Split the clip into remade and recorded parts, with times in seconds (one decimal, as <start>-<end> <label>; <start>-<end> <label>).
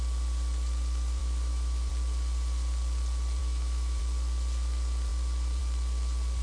0.0-1.2 recorded; 1.2-1.9 remade; 1.9-3.4 recorded; 3.4-4.0 remade; 4.0-6.4 recorded